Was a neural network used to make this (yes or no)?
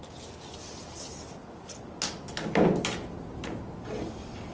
no